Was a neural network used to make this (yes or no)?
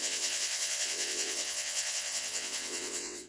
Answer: yes